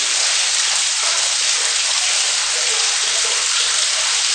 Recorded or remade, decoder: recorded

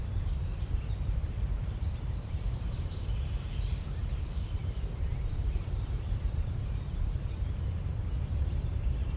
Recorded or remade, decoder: remade, vocoder, BigVGAN v2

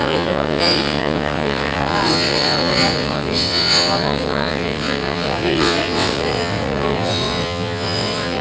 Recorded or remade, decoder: remade, vocoder, WaveNeXt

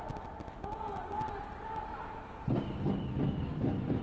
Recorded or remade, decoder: recorded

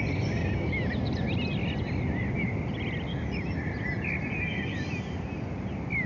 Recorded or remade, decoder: recorded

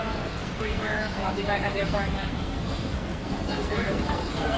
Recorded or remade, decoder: remade, codec, SNAC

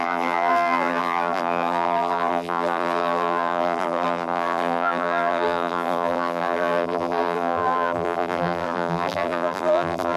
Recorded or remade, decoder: remade, vocoder, BigVGAN v2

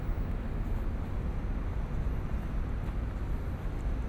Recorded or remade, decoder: recorded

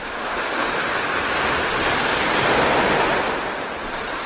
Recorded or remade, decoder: recorded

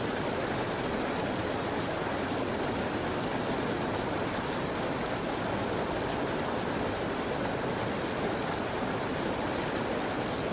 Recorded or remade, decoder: recorded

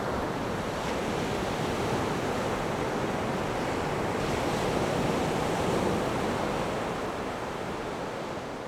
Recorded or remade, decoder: recorded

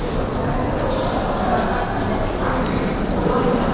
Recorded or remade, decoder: recorded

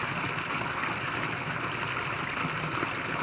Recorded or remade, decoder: recorded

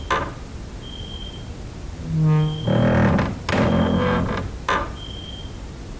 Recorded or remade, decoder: recorded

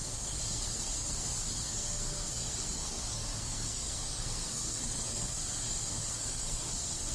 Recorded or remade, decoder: remade, codec, SNAC